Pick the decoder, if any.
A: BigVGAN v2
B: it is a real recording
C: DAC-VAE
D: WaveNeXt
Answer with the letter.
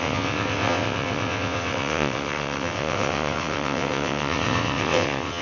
D